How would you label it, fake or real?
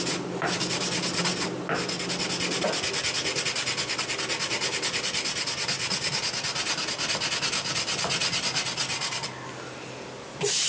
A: real